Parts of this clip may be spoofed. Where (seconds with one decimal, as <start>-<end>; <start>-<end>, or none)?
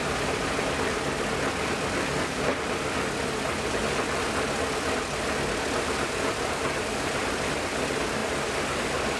none